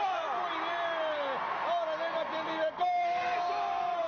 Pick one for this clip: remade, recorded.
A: recorded